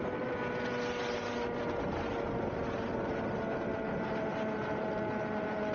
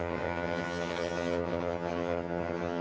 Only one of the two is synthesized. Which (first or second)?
second